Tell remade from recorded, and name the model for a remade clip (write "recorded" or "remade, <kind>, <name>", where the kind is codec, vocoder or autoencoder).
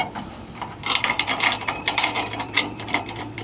remade, vocoder, BigVGAN v2